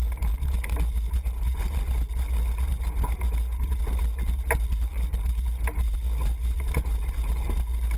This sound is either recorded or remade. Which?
recorded